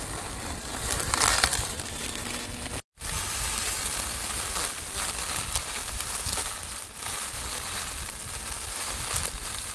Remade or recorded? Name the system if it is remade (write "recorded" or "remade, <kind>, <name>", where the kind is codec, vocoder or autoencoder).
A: recorded